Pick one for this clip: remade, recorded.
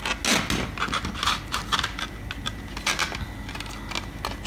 recorded